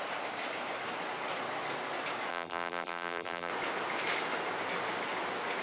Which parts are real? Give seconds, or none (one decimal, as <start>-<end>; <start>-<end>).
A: 0.0-2.3; 3.5-5.6